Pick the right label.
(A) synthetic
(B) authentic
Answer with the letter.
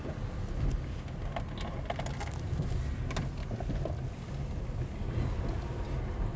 B